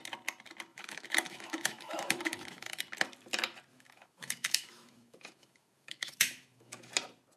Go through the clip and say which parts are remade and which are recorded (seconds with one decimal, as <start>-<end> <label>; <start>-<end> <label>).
0.0-0.7 recorded; 0.7-2.8 remade; 2.8-3.7 recorded; 3.7-6.9 remade; 6.9-7.4 recorded